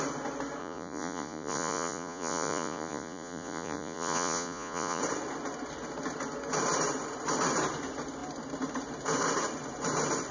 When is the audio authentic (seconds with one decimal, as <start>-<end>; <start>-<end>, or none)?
0.0-0.6; 5.0-10.3